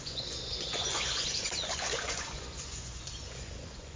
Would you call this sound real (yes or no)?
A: no